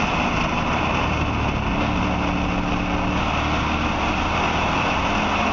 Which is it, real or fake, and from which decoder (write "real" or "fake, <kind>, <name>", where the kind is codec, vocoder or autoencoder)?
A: real